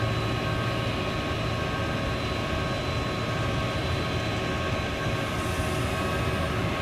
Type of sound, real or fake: real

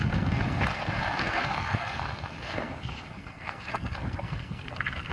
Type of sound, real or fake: fake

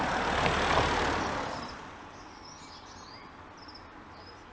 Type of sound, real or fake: real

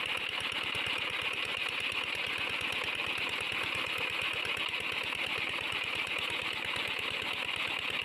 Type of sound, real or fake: real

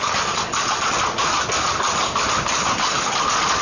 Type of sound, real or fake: real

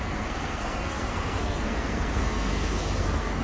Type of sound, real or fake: fake